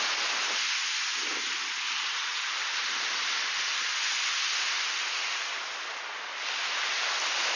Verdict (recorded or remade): recorded